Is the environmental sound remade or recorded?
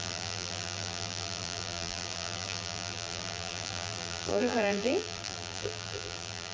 remade